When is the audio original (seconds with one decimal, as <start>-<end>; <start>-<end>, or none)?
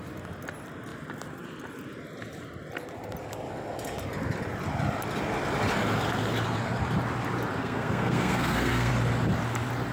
0.0-7.6; 8.9-9.9